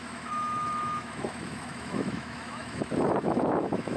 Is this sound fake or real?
fake